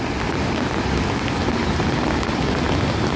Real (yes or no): yes